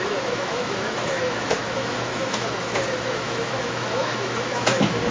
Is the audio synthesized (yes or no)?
yes